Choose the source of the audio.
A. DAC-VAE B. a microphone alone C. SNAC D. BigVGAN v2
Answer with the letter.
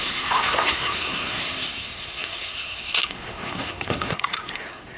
C